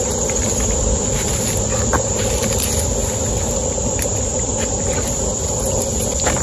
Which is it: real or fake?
real